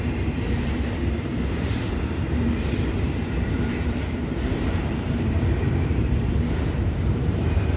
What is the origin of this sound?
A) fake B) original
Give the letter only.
A